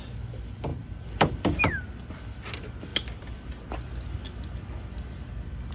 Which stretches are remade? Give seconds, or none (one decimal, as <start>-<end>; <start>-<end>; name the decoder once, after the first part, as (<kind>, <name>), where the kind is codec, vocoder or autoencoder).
none